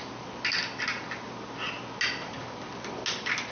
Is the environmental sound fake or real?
real